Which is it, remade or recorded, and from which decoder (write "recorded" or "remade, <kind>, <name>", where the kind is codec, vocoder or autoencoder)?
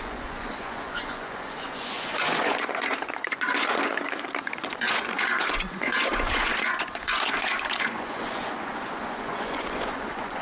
remade, vocoder, Vocos